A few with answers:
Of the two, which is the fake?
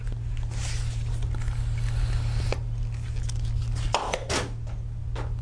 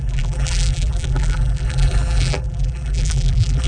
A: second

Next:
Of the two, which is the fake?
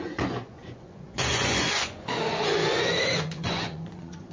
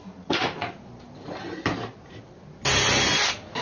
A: first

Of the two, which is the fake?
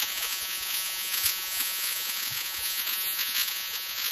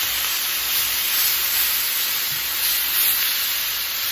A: first